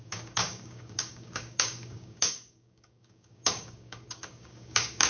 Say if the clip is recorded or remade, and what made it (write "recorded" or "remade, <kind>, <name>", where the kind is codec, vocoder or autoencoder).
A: remade, codec, DAC